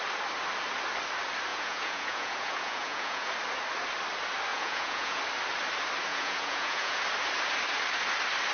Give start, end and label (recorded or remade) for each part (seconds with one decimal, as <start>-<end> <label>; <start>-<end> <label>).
0.0-1.5 recorded; 1.5-3.3 remade; 3.3-4.5 recorded; 4.5-5.2 remade; 5.2-6.1 recorded; 6.1-7.0 remade; 7.0-8.5 recorded